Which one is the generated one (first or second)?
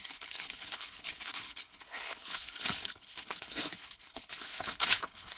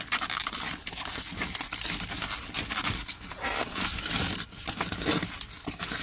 first